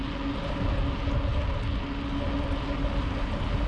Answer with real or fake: real